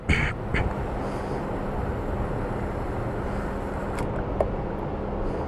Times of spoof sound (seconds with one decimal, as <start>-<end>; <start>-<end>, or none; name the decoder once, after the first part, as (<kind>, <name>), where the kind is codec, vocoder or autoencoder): none